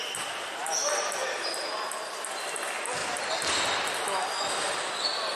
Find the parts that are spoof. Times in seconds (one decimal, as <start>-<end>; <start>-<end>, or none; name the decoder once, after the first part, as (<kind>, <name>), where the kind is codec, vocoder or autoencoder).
none